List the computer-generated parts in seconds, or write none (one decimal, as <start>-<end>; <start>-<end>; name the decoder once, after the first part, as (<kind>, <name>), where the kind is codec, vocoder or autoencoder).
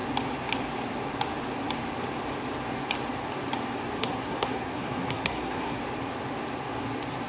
4.0-5.8 (codec, SNAC)